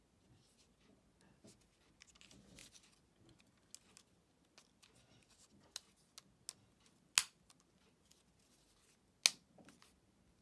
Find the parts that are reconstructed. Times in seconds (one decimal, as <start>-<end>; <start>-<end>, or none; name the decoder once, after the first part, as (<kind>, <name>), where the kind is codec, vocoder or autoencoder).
none